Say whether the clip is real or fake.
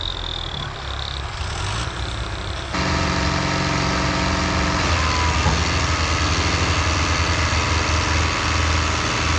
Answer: real